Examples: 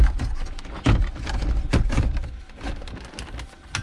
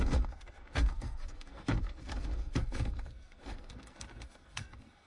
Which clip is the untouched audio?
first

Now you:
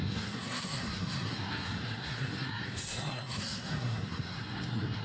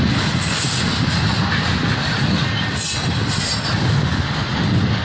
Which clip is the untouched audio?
second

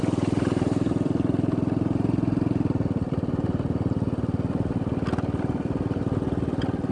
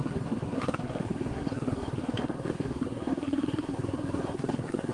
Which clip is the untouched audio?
first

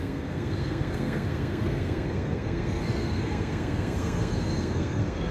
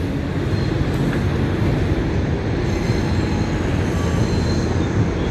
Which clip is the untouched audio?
second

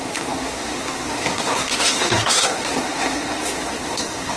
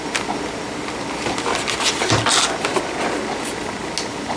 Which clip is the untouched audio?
second